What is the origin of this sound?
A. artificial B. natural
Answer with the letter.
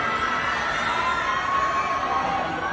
B